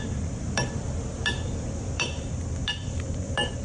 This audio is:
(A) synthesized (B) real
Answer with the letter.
A